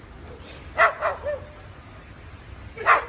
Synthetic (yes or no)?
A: no